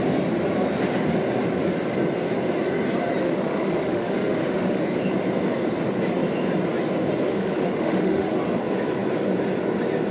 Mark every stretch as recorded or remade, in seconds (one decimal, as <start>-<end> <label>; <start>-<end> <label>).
0.0-3.2 recorded; 3.2-4.8 remade; 4.8-7.3 recorded; 7.3-8.3 remade; 8.3-10.1 recorded